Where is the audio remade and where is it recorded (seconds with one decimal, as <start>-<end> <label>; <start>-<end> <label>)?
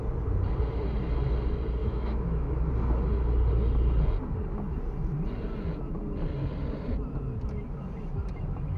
0.0-1.8 recorded; 1.8-2.7 remade; 2.7-8.8 recorded